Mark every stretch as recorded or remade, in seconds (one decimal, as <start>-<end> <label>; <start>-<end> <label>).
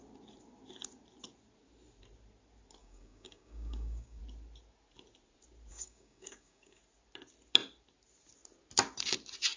0.0-2.8 recorded; 2.8-4.2 remade; 4.2-5.7 recorded; 5.7-6.8 remade; 6.8-9.6 recorded